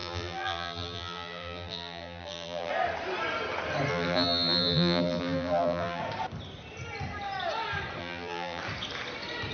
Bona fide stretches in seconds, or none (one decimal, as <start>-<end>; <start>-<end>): 2.7-3.9; 6.0-8.0; 8.6-9.5

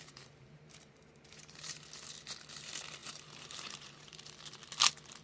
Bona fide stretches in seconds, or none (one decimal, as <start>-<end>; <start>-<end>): 1.8-3.0; 4.2-5.2

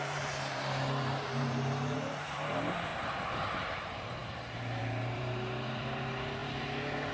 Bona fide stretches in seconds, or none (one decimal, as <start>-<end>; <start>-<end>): 2.9-3.5

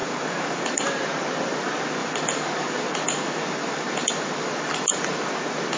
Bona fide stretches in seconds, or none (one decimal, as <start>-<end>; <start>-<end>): 1.0-2.0; 4.5-5.8

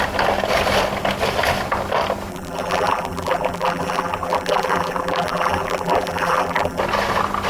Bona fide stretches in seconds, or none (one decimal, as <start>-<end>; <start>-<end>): 0.0-2.3; 6.8-7.5

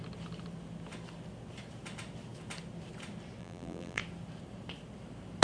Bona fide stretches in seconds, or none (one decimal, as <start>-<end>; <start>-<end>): 0.0-3.4; 4.0-5.4

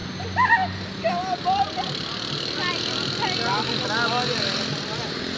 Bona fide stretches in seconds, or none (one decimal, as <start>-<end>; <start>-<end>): 0.0-5.4